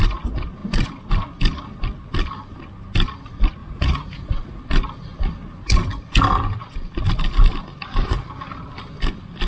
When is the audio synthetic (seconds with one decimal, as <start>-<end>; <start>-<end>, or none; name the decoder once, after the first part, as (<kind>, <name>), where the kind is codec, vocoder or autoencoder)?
3.6-4.6 (vocoder, Vocos)